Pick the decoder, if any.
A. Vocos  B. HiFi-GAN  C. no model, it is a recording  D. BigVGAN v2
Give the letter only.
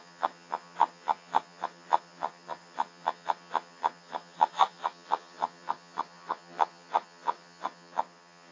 B